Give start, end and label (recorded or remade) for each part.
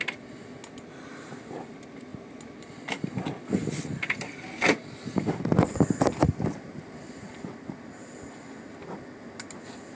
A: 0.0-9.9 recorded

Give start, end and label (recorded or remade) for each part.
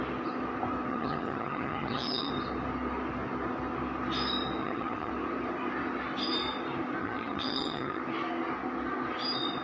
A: 0.0-0.9 recorded; 0.9-2.3 remade; 2.3-4.6 recorded; 4.6-5.1 remade; 5.1-7.0 recorded; 7.0-8.0 remade; 8.0-9.6 recorded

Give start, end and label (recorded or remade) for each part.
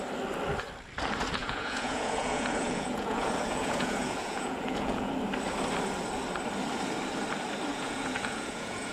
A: 0.0-1.4 recorded; 1.4-5.1 remade; 5.1-7.7 recorded; 7.7-8.9 remade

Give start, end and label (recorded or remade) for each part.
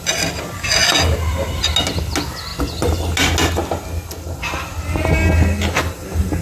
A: 0.0-6.4 recorded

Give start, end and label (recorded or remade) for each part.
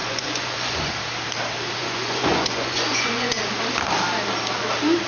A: 0.0-0.9 remade; 0.9-1.8 recorded; 1.8-3.5 remade; 3.5-5.1 recorded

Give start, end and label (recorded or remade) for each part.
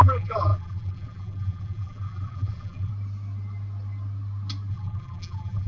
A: 0.0-2.9 remade; 2.9-4.7 recorded; 4.7-5.7 remade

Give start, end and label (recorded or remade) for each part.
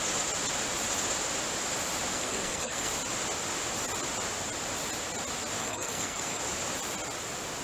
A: 0.0-2.1 recorded; 2.1-2.9 remade; 2.9-5.6 recorded; 5.6-6.4 remade; 6.4-7.6 recorded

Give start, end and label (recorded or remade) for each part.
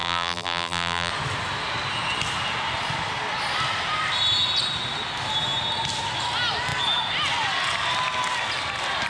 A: 0.0-1.1 remade; 1.1-9.1 recorded